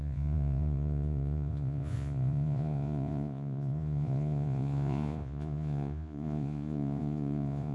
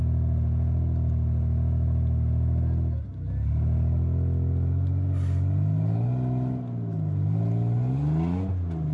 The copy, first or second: first